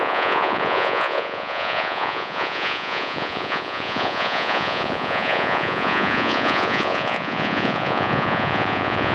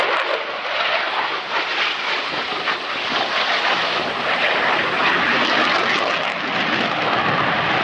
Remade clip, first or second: first